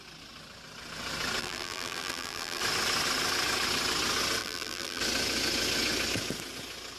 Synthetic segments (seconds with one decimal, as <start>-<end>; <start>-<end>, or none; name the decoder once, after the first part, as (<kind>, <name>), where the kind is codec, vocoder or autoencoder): 1.4-2.6 (vocoder, BigVGAN v2); 4.4-5.0